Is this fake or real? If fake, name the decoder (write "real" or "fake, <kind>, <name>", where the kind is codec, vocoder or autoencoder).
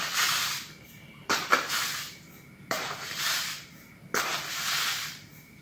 fake, vocoder, BigVGAN v2